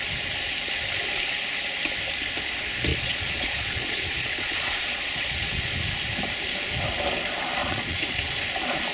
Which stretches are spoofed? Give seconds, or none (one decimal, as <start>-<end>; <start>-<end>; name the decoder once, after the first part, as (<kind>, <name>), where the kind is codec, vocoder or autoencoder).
2.9-5.7 (vocoder, Vocos); 7.6-8.4